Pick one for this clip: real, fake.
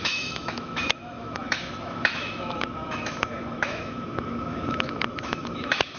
fake